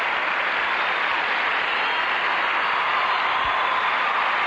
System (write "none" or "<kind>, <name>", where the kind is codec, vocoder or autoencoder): vocoder, BigVGAN v2